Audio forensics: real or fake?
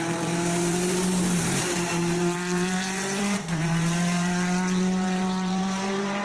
fake